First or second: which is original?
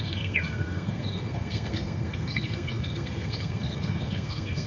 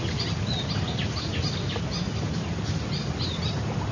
second